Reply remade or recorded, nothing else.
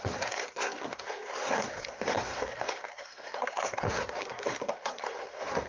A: remade